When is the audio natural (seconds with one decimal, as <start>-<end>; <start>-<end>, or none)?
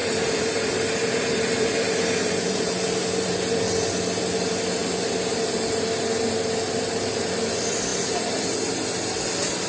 3.6-9.7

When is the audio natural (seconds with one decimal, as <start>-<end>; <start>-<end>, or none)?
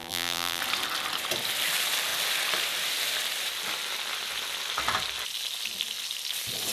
0.6-6.7